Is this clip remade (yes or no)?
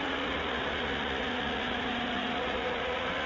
yes